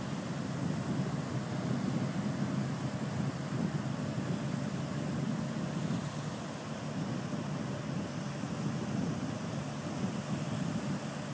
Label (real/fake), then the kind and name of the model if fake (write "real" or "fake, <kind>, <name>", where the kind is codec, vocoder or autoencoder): real